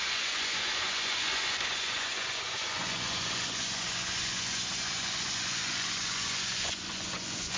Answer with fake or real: fake